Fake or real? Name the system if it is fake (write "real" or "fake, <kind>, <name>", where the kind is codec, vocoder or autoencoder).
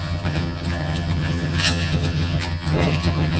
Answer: fake, vocoder, HiFi-GAN